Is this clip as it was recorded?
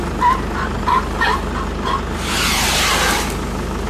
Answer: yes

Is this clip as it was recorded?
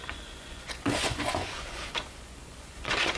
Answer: no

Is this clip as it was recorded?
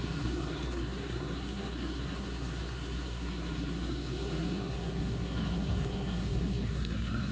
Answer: no